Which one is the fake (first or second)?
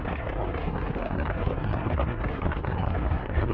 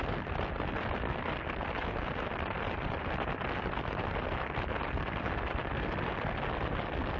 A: first